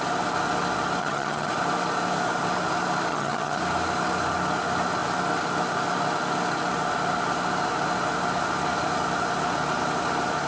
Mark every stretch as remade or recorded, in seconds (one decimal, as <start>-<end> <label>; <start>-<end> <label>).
0.0-1.0 recorded; 1.0-1.5 remade; 1.5-3.1 recorded; 3.1-3.6 remade; 3.6-10.5 recorded